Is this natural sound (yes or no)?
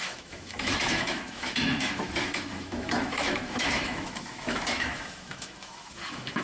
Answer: no